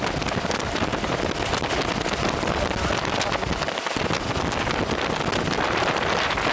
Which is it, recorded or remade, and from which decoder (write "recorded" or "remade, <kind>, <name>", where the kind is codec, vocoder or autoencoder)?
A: recorded